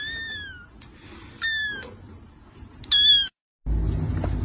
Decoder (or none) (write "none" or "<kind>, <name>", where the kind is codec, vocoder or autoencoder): none